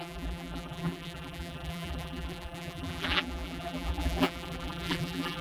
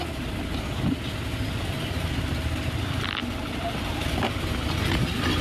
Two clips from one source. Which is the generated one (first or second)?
first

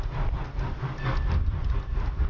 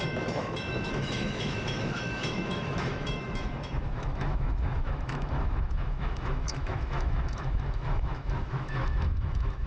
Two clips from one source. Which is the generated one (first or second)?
second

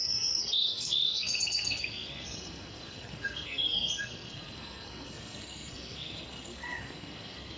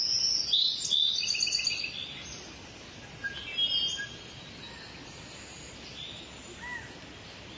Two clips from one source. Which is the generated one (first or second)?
first